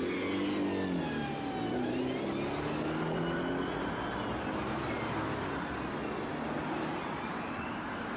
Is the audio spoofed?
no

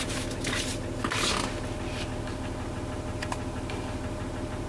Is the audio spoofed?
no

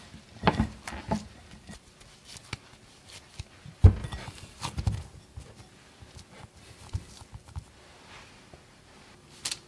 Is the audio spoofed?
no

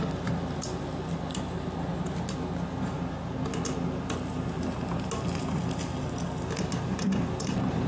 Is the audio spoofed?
no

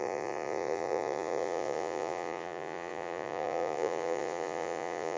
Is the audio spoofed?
yes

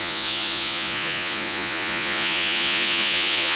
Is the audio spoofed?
yes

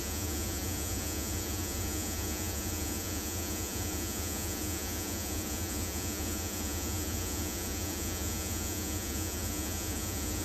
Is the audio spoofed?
yes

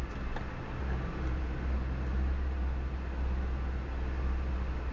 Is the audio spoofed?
no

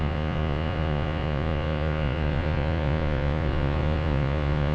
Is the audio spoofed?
yes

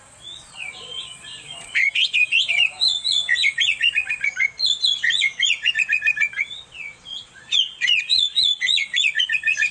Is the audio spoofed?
yes